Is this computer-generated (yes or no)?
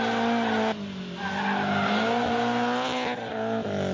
no